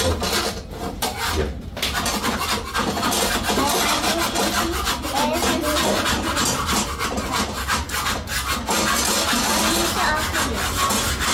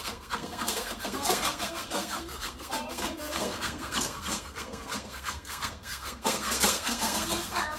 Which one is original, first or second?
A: first